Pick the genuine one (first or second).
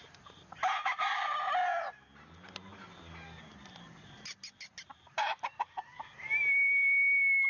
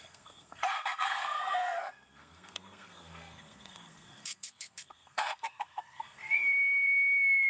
first